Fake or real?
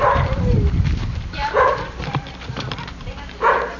fake